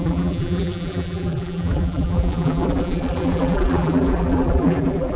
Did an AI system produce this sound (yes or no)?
yes